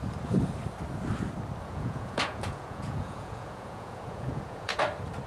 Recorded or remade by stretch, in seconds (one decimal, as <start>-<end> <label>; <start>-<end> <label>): 0.0-1.6 recorded; 1.6-4.8 remade; 4.8-5.3 recorded